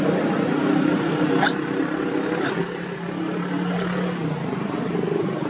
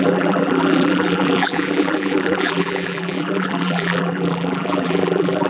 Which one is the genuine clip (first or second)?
first